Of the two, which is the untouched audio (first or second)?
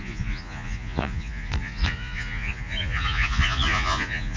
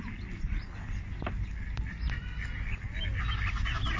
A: second